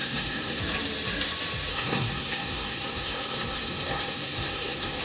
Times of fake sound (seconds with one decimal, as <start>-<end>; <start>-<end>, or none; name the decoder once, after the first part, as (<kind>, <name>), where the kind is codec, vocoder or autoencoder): 0.0-0.6 (codec, SNAC); 1.7-5.0